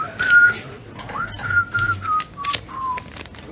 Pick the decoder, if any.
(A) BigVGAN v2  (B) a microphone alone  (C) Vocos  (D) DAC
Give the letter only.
B